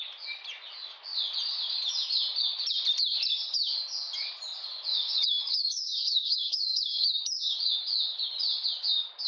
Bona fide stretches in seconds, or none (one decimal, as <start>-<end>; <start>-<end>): 0.0-4.9; 7.2-9.3